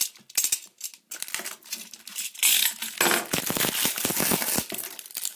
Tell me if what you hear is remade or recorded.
recorded